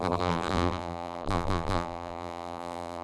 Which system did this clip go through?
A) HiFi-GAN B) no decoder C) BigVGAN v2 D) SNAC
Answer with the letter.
C